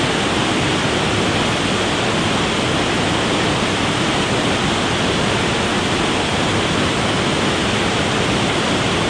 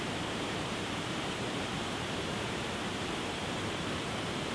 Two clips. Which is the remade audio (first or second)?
second